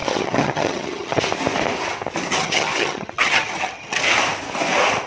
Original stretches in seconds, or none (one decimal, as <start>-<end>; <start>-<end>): 1.2-2.4; 4.0-5.1